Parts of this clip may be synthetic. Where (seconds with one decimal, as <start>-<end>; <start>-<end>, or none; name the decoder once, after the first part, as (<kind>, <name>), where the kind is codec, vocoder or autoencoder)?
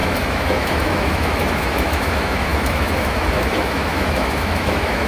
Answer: 0.0-5.1 (autoencoder, DAC-VAE)